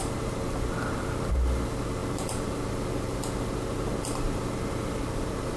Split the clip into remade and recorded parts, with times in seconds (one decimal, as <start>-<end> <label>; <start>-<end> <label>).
0.0-5.6 recorded